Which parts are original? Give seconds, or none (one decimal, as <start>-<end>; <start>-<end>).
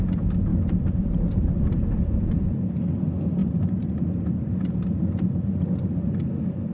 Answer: 0.0-0.5; 2.8-3.4; 5.6-6.7